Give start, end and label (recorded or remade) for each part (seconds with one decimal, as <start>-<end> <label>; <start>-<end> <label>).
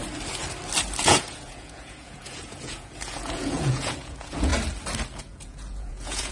0.0-1.0 recorded; 1.0-4.5 remade; 4.5-5.2 recorded; 5.2-6.3 remade